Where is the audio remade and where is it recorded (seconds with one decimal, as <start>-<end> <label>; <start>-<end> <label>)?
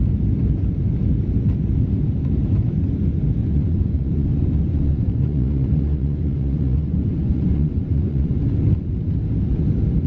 0.0-3.4 recorded; 3.4-8.4 remade; 8.4-10.1 recorded